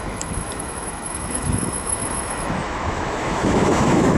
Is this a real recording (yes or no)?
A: no